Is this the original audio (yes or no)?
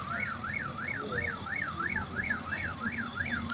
yes